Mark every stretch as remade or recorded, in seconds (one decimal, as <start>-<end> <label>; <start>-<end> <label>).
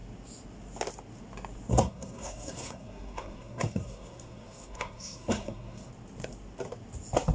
0.0-1.7 recorded; 1.7-5.9 remade; 5.9-7.3 recorded